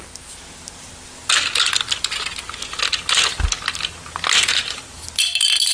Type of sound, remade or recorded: recorded